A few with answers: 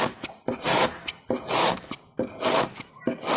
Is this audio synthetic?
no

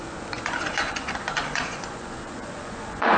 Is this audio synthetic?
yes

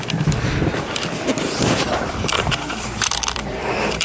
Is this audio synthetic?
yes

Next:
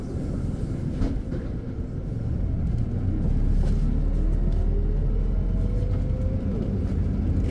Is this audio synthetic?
no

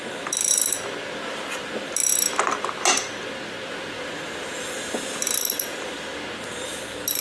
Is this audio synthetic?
no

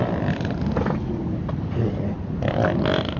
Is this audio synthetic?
no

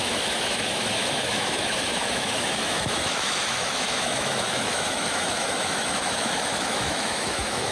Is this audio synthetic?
yes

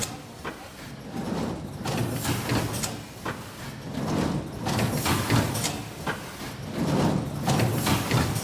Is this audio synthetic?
no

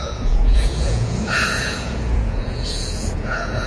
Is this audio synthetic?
yes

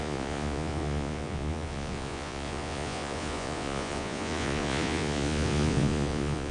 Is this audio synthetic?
yes